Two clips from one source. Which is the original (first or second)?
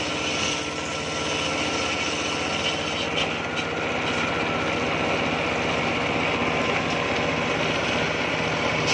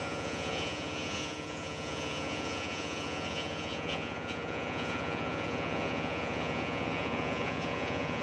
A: first